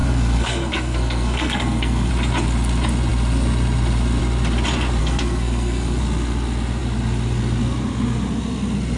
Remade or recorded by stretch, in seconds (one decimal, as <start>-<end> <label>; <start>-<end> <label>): 0.0-2.1 remade; 2.1-5.0 recorded; 5.0-6.0 remade; 6.0-9.0 recorded